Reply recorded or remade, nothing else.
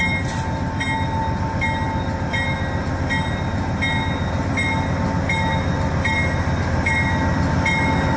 recorded